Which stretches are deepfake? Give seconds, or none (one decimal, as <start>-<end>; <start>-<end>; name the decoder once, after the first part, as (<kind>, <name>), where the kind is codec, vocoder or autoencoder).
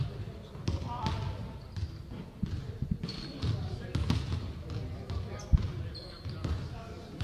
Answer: none